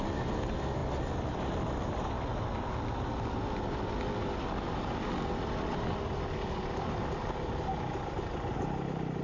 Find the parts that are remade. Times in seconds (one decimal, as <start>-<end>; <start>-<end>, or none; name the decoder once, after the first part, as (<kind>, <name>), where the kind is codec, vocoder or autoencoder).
none